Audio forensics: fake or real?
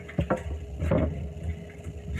real